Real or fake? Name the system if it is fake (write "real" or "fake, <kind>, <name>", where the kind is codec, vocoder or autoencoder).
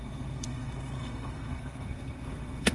fake, codec, SNAC